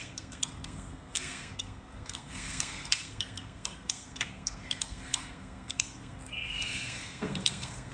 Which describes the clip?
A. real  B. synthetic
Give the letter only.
B